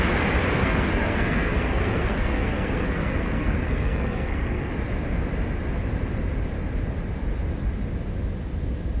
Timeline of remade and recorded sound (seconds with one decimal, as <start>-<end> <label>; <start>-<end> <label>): 0.0-0.6 recorded; 0.6-4.7 remade; 4.7-9.0 recorded